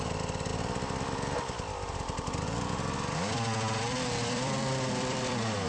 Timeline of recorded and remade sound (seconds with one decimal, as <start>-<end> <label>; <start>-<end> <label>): 0.0-5.7 remade